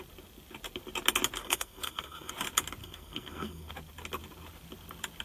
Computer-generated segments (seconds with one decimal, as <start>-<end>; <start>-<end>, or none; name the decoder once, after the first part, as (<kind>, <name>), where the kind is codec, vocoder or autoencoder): 1.4-2.3 (codec, SNAC); 2.8-3.7